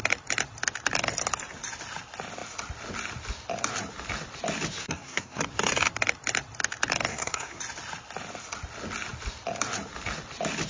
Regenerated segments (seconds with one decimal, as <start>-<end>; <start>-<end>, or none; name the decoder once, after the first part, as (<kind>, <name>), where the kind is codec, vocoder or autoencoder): 4.8-5.4 (codec, SNAC); 7.1-7.6